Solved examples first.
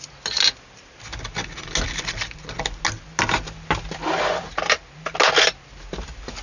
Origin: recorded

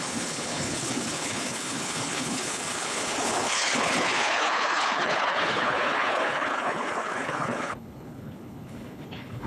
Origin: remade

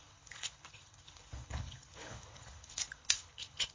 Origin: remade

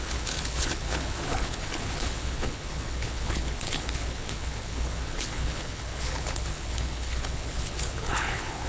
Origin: remade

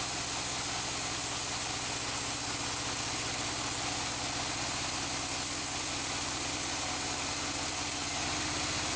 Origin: recorded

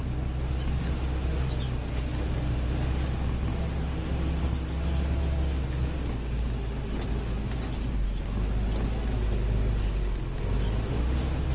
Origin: recorded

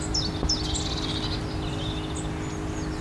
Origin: recorded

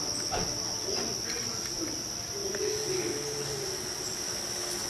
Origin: recorded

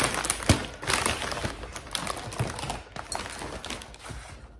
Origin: recorded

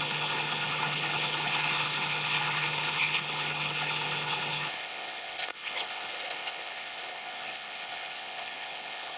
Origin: remade